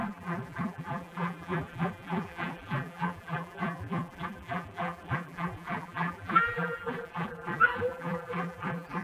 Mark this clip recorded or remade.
remade